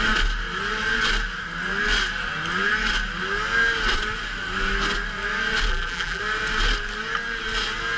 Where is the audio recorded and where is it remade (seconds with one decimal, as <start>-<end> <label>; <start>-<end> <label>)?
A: 0.0-5.7 recorded; 5.7-6.2 remade; 6.2-8.0 recorded